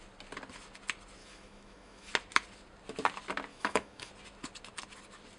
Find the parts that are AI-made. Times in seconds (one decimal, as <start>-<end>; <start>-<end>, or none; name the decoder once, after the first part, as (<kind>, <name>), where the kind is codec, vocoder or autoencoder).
1.2-2.1 (autoencoder, DAC-VAE); 3.5-4.1